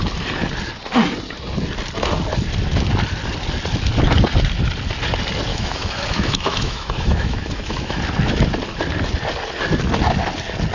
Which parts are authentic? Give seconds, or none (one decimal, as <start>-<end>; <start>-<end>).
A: 0.0-5.5; 8.0-10.7